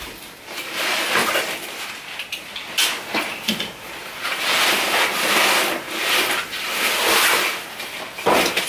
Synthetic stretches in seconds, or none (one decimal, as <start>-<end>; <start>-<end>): 1.2-2.1; 3.3-4.6